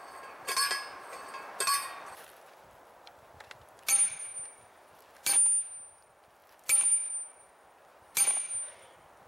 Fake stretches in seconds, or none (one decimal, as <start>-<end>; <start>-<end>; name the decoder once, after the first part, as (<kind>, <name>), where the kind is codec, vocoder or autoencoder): none